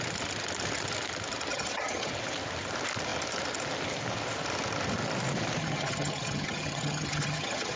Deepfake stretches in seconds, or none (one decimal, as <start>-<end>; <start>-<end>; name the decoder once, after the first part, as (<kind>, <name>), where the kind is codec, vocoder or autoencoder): 1.5-2.1 (vocoder, HiFi-GAN); 5.6-7.8